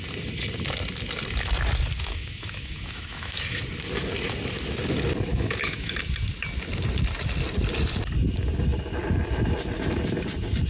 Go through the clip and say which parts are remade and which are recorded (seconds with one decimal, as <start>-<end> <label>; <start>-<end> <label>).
0.0-1.9 recorded; 1.9-3.6 remade; 3.6-5.3 recorded; 5.3-6.0 remade; 6.0-10.7 recorded